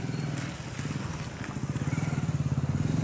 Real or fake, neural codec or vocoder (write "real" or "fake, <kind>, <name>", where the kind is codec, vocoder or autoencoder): real